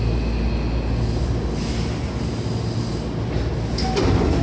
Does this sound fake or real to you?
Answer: real